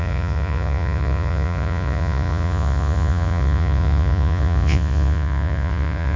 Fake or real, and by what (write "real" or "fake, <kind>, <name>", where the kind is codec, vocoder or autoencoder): fake, vocoder, Vocos